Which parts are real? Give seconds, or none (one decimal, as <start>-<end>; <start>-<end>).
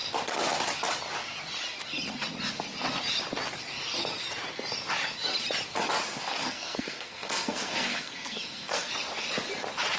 0.0-6.4; 8.9-10.0